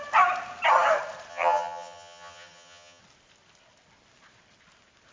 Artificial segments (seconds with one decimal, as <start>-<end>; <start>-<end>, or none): 1.3-3.0